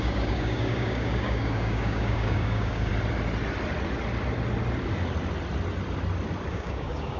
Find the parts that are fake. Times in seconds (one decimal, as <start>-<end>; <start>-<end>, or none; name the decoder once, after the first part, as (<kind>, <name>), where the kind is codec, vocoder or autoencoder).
0.0-2.9 (codec, DAC); 6.5-7.2